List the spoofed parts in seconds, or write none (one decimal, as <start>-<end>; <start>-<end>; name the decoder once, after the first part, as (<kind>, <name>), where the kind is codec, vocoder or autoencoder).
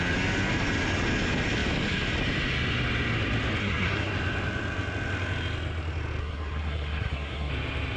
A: 3.6-4.1 (codec, SNAC); 6.2-7.5